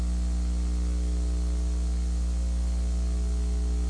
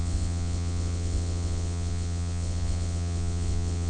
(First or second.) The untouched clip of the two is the first